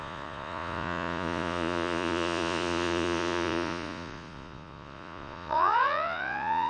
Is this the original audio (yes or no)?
no